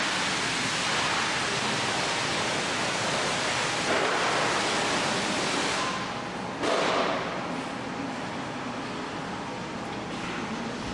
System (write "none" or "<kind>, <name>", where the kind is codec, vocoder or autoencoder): none